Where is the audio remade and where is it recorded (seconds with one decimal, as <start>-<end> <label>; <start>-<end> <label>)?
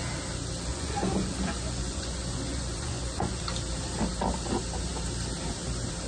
0.0-0.7 recorded; 0.7-3.4 remade; 3.4-6.1 recorded